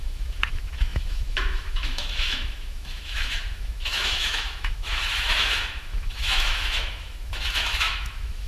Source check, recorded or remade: remade